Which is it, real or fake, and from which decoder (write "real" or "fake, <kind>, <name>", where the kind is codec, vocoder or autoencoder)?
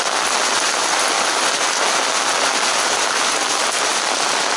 real